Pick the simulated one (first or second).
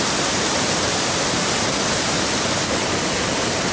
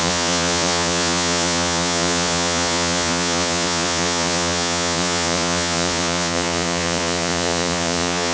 second